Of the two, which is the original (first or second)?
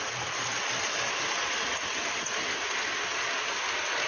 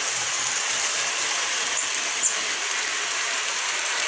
first